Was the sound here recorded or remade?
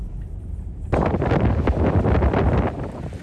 recorded